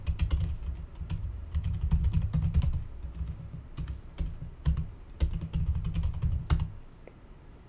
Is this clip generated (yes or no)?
no